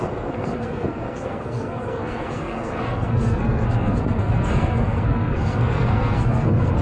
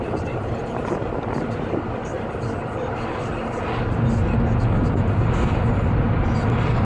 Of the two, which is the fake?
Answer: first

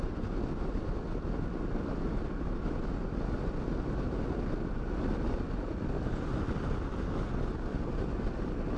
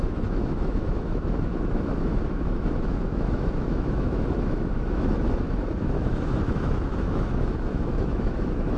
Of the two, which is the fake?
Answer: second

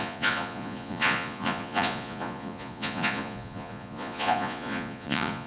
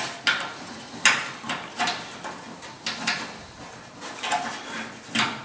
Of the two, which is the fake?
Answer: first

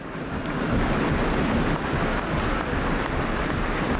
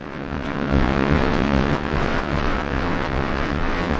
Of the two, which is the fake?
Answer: second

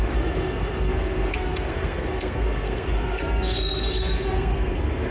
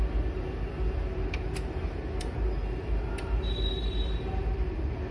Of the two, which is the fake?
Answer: first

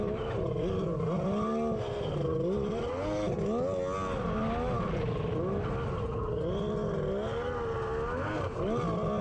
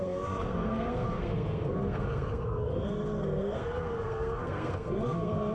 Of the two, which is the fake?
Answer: second